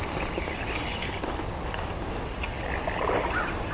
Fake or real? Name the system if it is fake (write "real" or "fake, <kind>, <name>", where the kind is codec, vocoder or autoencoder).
real